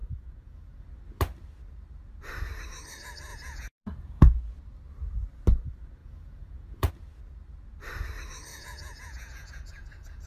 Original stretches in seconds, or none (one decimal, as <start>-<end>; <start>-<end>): 0.8-3.3; 4.4-6.0; 6.9-8.5